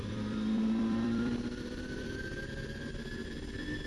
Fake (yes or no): yes